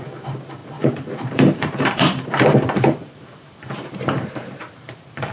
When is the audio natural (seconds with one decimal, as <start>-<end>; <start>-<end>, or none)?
none